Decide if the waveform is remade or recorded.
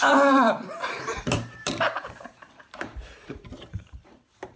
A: remade